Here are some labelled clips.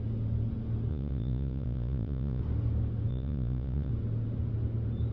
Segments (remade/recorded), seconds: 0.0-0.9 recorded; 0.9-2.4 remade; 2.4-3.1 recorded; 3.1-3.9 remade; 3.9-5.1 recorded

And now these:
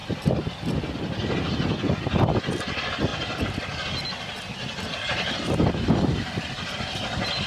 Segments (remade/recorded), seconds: 0.0-7.5 recorded

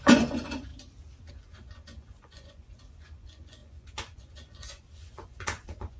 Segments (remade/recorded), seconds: 0.0-0.7 remade; 0.7-1.3 recorded; 1.3-6.0 remade

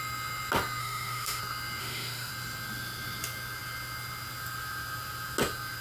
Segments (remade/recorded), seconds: 0.0-0.8 recorded; 0.8-1.4 remade; 1.4-1.8 recorded; 1.8-2.3 remade; 2.3-5.8 recorded

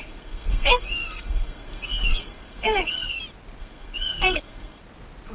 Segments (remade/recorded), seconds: 0.0-3.2 remade; 3.2-3.6 recorded; 3.6-4.8 remade; 4.8-5.3 recorded